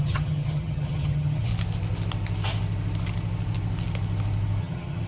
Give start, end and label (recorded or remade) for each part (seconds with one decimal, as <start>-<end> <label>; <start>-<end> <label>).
0.0-1.5 remade; 1.5-4.6 recorded; 4.6-5.1 remade